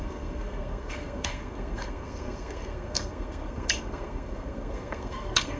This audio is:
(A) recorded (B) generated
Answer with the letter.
B